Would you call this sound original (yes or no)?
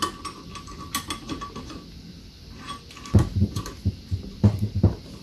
yes